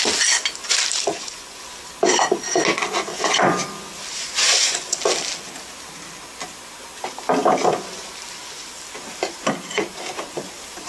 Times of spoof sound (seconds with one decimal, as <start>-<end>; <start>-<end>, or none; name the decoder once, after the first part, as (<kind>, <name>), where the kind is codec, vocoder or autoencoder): 1.1-1.6 (vocoder, Vocos); 3.1-3.6; 4.1-5.0